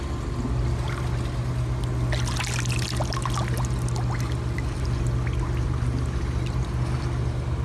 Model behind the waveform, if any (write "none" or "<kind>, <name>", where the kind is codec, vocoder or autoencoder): none